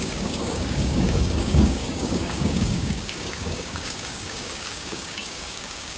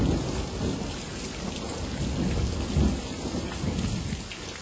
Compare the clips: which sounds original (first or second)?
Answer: second